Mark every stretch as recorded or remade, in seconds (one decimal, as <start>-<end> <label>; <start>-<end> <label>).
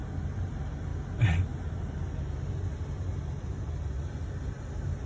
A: 0.0-5.1 recorded